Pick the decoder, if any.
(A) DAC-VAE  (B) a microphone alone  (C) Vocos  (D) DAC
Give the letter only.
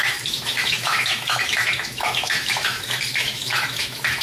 A